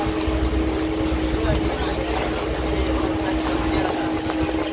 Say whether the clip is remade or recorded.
recorded